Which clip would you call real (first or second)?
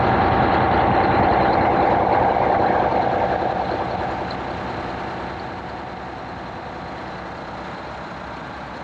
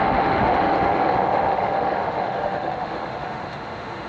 first